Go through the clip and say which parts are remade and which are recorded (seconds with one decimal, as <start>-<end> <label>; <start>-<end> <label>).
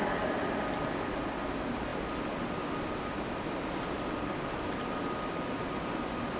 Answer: 0.0-6.4 recorded